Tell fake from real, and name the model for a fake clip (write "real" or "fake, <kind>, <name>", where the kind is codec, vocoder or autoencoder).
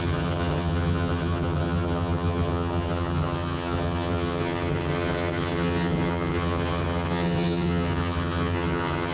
fake, vocoder, HiFi-GAN